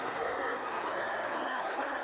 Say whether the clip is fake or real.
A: fake